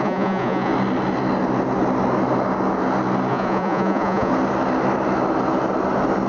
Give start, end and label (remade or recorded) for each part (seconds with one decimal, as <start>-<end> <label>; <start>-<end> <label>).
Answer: 0.0-0.7 remade; 0.7-3.3 recorded; 3.3-4.3 remade; 4.3-6.3 recorded